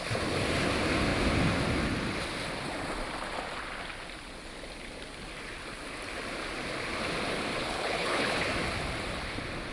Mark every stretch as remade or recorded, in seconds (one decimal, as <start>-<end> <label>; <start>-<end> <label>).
0.0-7.6 recorded; 7.6-8.5 remade; 8.5-9.7 recorded